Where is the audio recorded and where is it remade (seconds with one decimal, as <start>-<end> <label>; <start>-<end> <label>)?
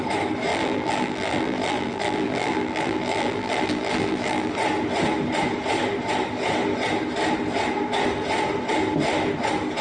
0.0-0.5 recorded; 0.5-4.5 remade; 4.5-9.8 recorded